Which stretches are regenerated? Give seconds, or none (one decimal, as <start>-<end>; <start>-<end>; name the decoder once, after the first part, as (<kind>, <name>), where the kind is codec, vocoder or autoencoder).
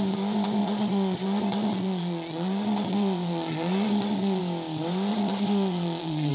0.6-4.4 (vocoder, Vocos); 5.1-6.3